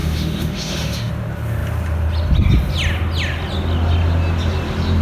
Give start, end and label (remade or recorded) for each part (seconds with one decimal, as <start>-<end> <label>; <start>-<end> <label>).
0.0-1.1 remade; 1.1-5.0 recorded